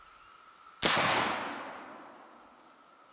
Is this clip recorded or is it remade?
recorded